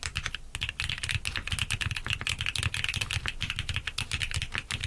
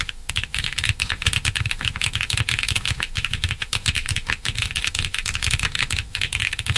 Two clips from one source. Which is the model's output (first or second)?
second